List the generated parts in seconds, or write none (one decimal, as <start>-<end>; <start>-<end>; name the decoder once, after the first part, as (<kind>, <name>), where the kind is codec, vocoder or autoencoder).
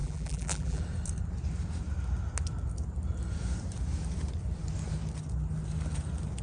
0.0-0.8 (vocoder, BigVGAN v2)